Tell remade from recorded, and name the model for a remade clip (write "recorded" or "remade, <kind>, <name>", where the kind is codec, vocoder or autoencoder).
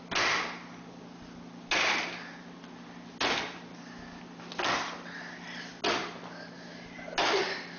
recorded